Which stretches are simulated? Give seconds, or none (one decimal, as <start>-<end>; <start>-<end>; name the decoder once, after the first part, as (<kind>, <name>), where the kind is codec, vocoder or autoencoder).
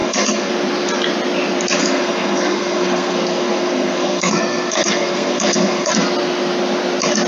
0.0-0.5 (codec, SNAC); 1.8-5.9